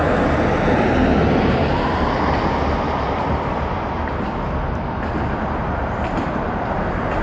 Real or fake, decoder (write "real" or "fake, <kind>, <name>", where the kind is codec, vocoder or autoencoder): fake, vocoder, BigVGAN v2